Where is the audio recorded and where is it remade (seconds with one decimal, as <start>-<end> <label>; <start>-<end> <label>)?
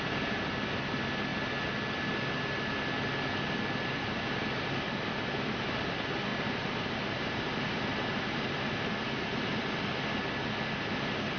0.0-6.3 recorded; 6.3-8.7 remade; 8.7-11.4 recorded